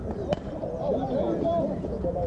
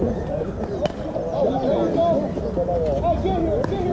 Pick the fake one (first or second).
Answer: first